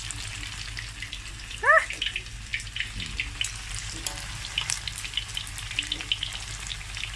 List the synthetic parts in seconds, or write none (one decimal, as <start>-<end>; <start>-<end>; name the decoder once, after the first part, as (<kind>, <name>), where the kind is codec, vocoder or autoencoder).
none